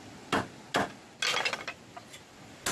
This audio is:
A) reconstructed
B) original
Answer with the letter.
B